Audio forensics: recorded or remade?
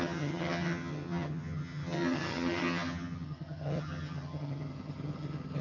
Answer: remade